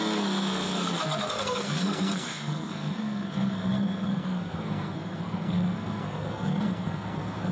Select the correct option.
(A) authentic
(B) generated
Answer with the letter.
B